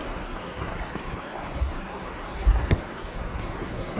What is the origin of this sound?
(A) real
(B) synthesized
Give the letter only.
B